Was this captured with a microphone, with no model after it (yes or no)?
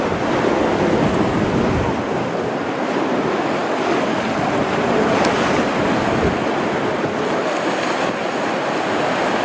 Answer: yes